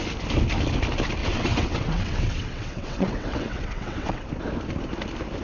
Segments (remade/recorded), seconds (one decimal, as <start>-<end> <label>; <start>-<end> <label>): 0.0-1.2 recorded; 1.2-4.3 remade; 4.3-5.4 recorded